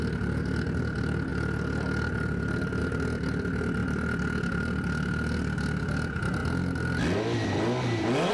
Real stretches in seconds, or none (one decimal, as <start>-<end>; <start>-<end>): 0.0-8.3